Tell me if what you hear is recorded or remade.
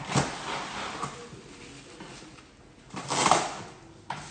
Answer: recorded